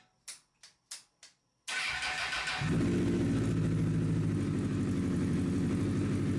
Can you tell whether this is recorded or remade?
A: recorded